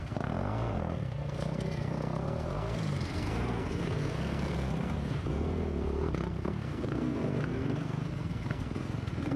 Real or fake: fake